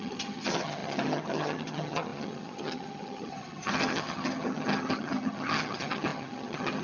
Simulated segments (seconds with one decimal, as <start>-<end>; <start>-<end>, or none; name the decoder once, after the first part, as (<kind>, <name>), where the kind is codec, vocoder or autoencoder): 0.0-6.8 (vocoder, HiFi-GAN)